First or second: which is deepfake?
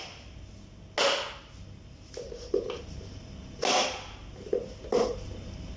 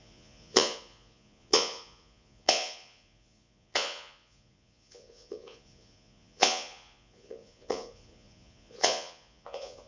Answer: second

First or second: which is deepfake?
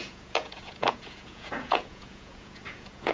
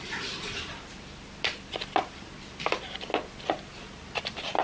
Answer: first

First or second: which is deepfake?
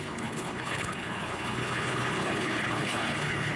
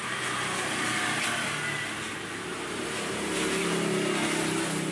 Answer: first